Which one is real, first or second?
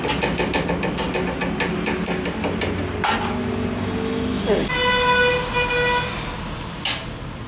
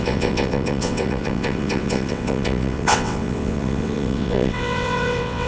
first